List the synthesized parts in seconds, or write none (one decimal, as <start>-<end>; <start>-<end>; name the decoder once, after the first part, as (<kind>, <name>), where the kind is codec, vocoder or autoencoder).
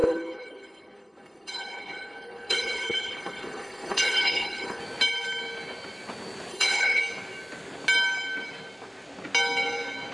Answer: 0.0-4.8 (codec, HILCodec); 6.5-7.0